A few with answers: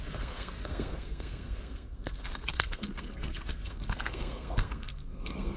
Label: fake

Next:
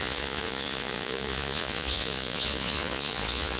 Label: fake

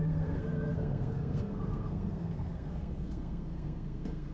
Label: fake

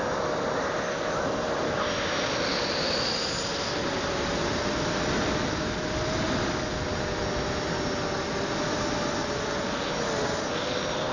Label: real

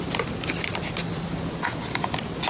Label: real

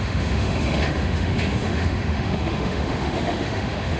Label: fake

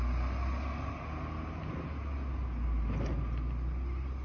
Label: real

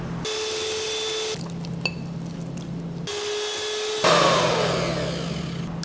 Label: real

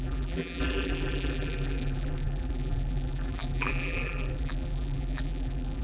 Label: fake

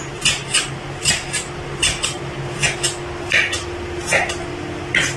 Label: real